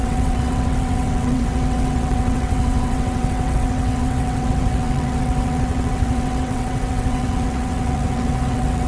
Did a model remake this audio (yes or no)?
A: yes